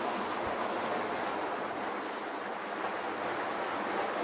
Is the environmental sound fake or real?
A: real